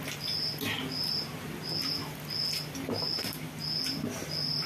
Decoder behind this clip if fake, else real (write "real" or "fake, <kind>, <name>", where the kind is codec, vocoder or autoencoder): real